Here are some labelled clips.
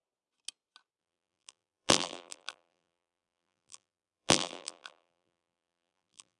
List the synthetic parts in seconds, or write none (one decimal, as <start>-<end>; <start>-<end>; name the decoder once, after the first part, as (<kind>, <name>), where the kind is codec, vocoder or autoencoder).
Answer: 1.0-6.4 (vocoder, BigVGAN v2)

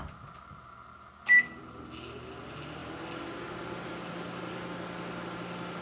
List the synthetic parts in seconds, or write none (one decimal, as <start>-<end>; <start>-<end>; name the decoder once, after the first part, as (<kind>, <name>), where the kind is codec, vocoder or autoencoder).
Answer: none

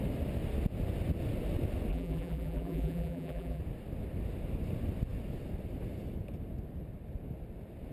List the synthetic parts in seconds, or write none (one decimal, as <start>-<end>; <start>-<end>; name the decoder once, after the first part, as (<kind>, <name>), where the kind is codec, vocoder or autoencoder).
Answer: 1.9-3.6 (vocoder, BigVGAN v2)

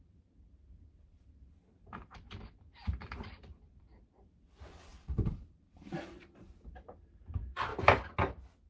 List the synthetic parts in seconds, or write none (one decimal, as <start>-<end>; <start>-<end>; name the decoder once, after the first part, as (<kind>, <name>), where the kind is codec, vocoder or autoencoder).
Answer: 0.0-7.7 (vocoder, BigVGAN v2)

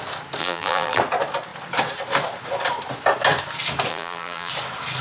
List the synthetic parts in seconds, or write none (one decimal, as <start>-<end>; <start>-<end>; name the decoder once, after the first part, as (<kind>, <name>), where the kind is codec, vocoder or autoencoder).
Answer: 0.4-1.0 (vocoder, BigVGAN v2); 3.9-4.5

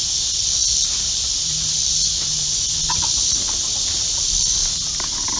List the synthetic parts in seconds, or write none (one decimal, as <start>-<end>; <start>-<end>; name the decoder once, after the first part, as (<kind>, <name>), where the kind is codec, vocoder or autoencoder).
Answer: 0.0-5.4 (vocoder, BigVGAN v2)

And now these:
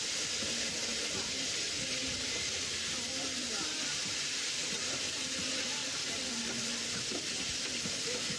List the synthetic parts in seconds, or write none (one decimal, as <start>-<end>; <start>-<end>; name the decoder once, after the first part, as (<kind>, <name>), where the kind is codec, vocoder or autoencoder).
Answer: 0.9-5.2 (vocoder, BigVGAN v2); 5.8-6.3

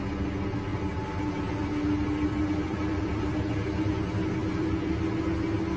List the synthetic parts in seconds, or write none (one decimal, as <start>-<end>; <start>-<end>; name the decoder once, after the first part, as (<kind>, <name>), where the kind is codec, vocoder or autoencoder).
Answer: 0.7-1.2 (vocoder, BigVGAN v2); 2.7-3.4; 4.4-5.2